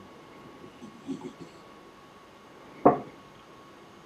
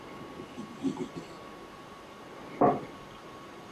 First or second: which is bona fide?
first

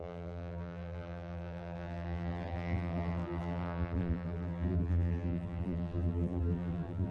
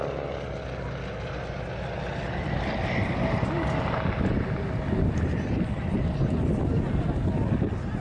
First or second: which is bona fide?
second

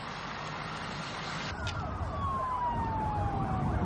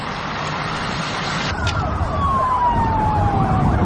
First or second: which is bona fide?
first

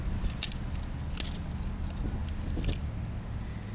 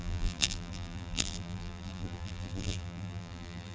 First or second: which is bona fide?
first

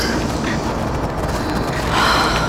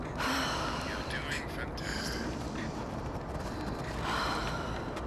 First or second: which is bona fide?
first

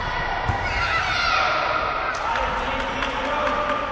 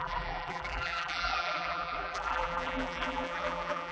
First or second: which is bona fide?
first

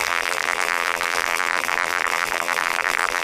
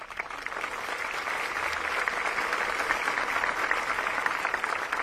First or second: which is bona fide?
second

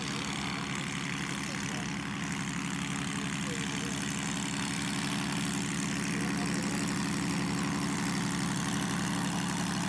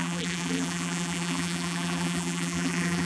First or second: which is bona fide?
first